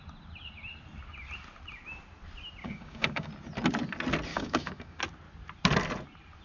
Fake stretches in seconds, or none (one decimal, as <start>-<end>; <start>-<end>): 2.6-3.3; 4.3-5.0

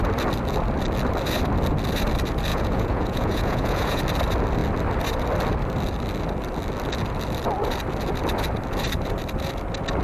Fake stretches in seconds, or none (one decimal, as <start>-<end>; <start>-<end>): 2.5-4.0

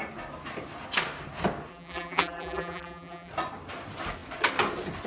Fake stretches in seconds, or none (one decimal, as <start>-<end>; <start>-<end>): 1.7-3.3